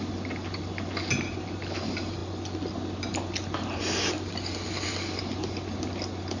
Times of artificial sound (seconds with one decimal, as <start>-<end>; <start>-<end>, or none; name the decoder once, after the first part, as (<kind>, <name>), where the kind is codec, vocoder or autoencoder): none